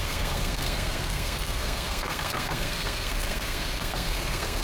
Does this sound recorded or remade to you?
remade